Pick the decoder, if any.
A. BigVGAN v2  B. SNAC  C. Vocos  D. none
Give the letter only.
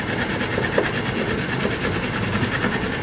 D